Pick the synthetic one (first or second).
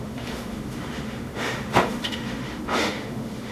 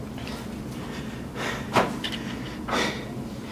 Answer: first